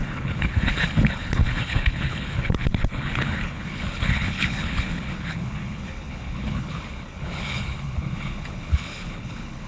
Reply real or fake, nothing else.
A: fake